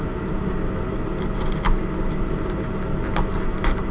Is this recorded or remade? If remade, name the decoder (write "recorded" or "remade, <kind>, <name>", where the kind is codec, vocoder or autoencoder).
recorded